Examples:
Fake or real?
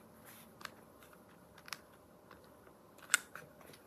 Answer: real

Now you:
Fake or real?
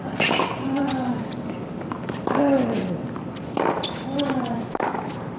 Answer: real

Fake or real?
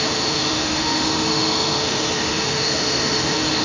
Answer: fake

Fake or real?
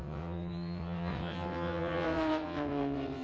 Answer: fake